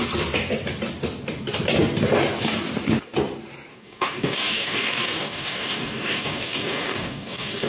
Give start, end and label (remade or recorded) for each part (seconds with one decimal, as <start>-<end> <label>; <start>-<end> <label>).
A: 0.0-3.7 recorded; 3.7-7.7 remade